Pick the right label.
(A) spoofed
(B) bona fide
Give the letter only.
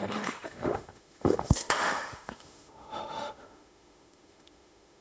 A